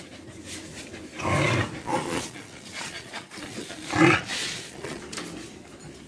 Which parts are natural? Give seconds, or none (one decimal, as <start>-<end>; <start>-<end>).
0.0-1.8; 5.0-6.1